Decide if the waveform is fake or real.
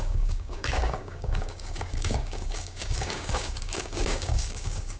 fake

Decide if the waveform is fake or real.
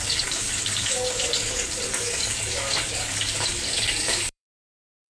fake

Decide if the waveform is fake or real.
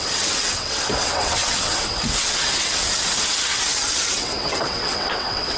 fake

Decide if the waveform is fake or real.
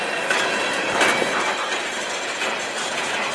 fake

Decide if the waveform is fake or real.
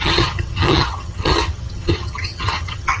fake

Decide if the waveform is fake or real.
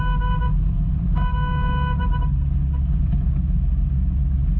real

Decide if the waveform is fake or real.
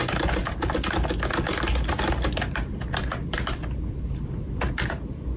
real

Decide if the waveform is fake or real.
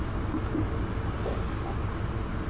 real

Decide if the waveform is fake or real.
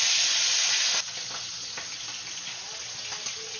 real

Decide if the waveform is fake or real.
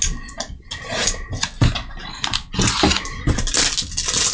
real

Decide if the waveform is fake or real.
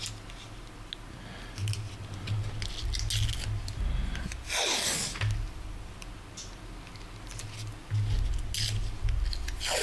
real